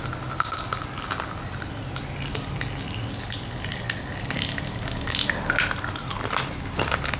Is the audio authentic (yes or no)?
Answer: yes